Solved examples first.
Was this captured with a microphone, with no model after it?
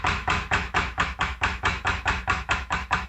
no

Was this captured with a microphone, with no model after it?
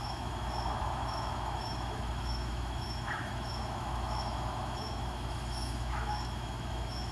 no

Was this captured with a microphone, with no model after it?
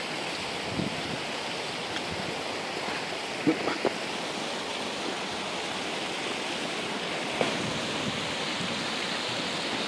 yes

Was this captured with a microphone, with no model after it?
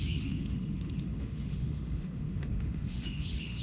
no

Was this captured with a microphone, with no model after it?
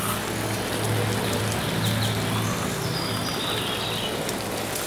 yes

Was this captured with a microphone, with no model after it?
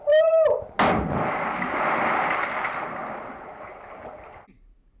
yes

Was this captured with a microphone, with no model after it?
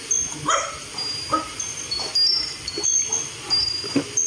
yes